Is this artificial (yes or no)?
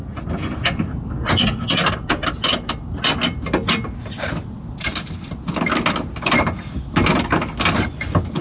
no